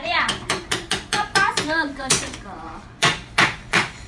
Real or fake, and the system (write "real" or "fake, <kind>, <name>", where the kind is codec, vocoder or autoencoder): fake, vocoder, Vocos